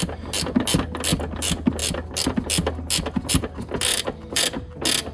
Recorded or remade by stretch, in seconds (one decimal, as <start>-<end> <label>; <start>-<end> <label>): 0.0-3.9 recorded; 3.9-4.4 remade; 4.4-5.1 recorded